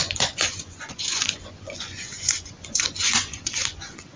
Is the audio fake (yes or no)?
yes